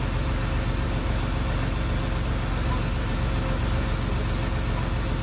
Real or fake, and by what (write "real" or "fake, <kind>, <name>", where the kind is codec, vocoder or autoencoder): real